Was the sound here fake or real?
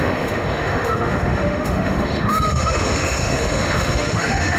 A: fake